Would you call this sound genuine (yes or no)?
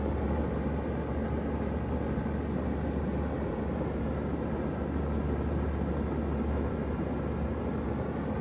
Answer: yes